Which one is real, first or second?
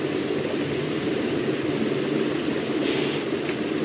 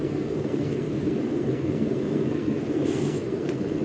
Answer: first